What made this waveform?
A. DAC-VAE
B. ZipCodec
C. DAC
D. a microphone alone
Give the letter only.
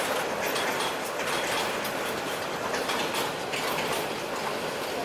D